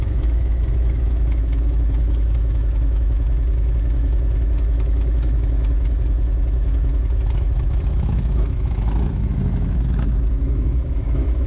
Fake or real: fake